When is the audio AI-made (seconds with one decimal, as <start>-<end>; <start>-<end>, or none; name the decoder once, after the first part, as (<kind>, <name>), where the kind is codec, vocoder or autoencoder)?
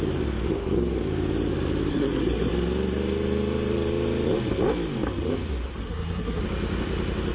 1.9-2.5 (codec, SNAC); 5.8-6.4